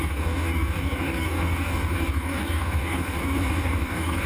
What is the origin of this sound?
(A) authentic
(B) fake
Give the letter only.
B